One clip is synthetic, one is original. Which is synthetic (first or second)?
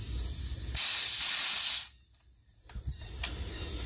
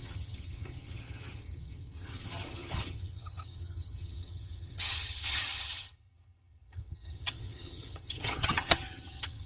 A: second